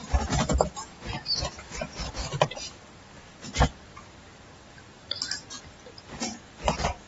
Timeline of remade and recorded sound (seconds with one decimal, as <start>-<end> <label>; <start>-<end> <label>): 0.0-7.1 recorded